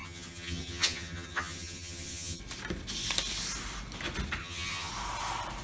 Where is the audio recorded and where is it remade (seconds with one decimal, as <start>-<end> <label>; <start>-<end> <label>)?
0.0-2.4 remade; 2.4-4.4 recorded; 4.4-4.9 remade; 4.9-5.6 recorded